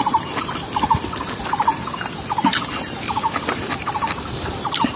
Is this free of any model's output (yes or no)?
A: yes